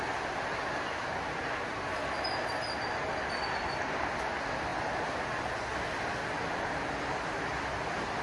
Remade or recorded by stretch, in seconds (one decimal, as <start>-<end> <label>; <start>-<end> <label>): 0.0-8.2 recorded